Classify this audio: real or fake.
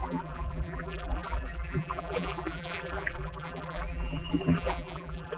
fake